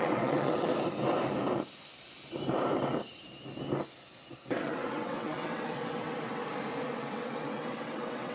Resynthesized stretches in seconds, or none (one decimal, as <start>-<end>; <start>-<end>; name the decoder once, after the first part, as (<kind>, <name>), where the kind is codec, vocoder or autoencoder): 0.0-0.7 (vocoder, WaveNeXt); 4.6-6.4; 6.9-8.3